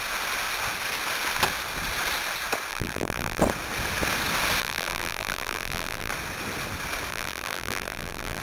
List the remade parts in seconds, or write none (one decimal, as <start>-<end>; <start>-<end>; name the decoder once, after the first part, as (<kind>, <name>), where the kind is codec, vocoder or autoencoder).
2.7-3.4 (vocoder, BigVGAN v2); 4.6-6.1; 7.1-8.4